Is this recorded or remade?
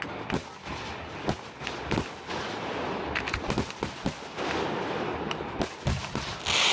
recorded